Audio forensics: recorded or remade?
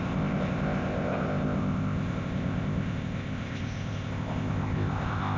remade